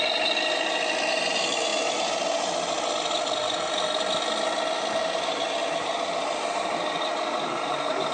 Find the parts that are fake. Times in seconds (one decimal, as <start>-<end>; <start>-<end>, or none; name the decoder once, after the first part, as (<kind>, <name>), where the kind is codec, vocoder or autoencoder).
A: none